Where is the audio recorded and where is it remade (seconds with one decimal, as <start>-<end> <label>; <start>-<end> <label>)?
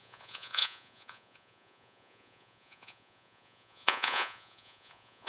0.0-5.3 remade